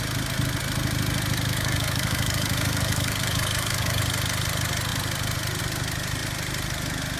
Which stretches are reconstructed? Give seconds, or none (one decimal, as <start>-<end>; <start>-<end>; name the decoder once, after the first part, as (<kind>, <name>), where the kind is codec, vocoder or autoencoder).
1.5-4.0 (codec, DAC)

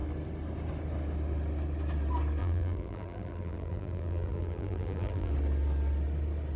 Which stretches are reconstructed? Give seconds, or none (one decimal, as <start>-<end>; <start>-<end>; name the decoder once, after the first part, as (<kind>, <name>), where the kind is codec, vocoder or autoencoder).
2.4-5.3 (vocoder, BigVGAN v2)

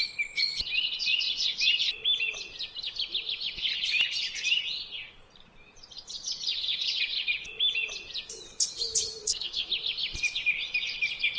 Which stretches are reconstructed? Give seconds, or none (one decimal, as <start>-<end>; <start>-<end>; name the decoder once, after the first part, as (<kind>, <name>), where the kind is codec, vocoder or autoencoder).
9.2-9.7 (codec, SNAC)

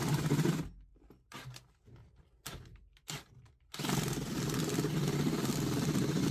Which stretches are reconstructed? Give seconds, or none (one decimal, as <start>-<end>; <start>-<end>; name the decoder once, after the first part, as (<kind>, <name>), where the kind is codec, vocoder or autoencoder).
none

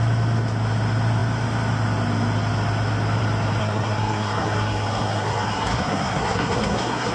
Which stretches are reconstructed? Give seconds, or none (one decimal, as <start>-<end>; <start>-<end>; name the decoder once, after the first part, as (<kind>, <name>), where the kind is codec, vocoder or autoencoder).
3.6-7.1 (codec, SNAC)

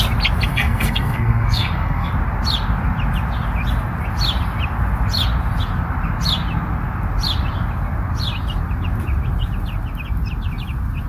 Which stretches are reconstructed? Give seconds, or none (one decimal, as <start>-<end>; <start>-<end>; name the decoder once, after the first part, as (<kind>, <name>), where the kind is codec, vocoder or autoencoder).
0.5-2.1 (codec, SNAC)

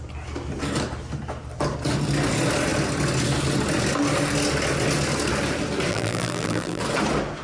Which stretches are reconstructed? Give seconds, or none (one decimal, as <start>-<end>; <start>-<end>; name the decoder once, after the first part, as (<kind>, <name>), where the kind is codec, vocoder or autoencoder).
5.9-6.8 (vocoder, BigVGAN v2)